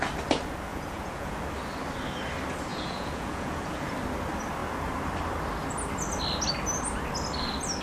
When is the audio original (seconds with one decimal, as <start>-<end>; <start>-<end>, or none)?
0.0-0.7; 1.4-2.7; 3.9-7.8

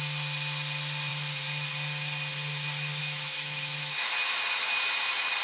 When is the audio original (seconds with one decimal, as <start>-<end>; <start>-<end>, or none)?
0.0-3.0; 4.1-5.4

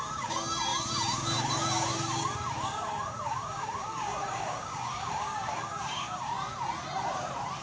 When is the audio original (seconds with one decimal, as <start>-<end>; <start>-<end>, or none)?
6.3-7.6

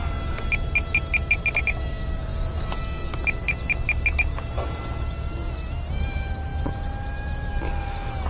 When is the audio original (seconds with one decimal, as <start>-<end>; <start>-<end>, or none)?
0.0-8.3

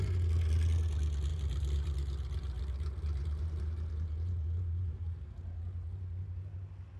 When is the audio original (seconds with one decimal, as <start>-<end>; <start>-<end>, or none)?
0.0-1.3; 5.3-7.0